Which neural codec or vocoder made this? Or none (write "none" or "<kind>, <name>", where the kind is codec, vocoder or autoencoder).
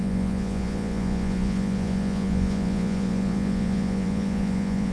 vocoder, Vocos